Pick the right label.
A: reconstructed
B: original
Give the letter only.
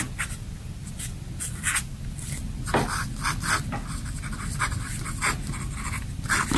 A